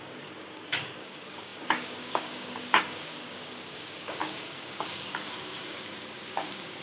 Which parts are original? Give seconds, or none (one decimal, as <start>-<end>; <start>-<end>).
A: none